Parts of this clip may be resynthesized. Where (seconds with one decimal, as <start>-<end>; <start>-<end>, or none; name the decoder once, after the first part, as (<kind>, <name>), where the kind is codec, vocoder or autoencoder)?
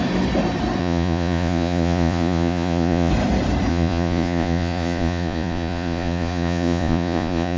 0.8-3.1 (vocoder, Vocos); 3.7-7.6